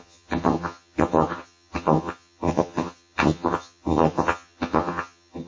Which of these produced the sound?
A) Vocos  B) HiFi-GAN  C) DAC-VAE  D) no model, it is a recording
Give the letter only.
B